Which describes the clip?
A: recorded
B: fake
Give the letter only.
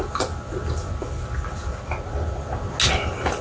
A